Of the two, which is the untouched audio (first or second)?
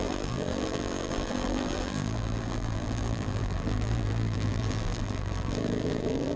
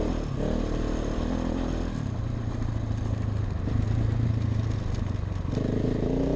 second